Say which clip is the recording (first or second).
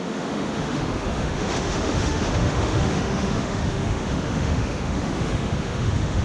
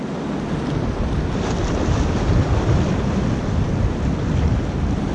second